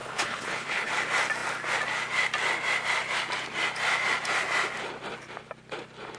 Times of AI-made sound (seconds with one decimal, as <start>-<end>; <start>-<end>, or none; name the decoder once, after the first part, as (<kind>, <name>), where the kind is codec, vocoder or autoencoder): 0.0-0.9 (codec, HILCodec)